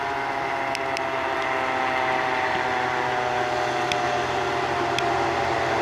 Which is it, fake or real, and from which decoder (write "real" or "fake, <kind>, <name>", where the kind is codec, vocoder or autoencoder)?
real